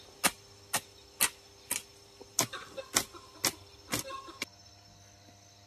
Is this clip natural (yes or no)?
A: yes